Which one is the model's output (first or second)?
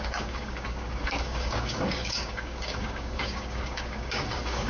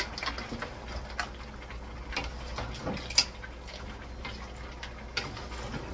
first